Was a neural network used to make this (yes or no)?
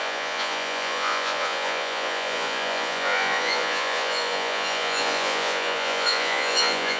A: yes